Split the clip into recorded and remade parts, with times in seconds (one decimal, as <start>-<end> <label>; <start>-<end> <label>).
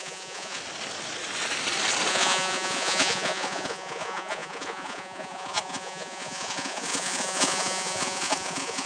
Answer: 0.0-0.6 remade; 0.6-2.1 recorded; 2.1-8.9 remade